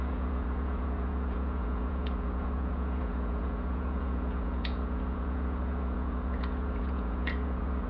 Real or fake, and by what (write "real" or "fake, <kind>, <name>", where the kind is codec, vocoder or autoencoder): fake, vocoder, Vocos